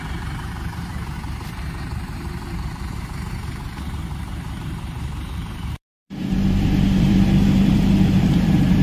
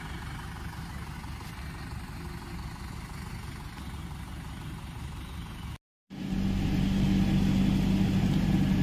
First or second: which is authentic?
second